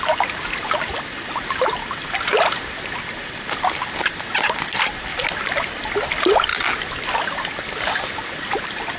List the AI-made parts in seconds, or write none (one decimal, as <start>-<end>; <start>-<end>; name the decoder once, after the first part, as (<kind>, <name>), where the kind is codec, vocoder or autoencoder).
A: 5.1-5.9 (vocoder, BigVGAN v2)